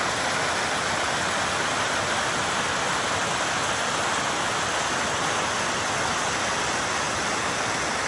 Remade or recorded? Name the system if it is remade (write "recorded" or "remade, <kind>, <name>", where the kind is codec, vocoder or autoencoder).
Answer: recorded